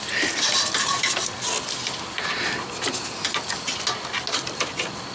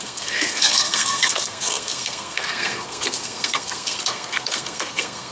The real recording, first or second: first